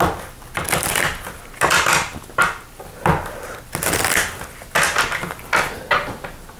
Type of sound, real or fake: real